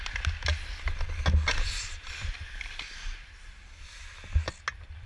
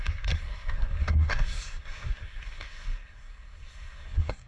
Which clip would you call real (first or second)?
first